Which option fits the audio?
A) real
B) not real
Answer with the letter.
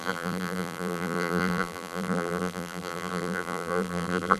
B